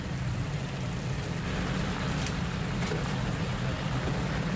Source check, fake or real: real